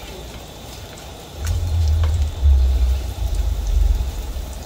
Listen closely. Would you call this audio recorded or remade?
remade